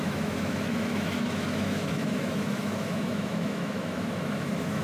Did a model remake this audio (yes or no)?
yes